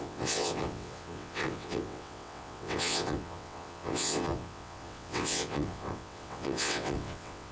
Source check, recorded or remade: remade